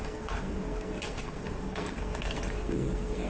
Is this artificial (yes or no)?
yes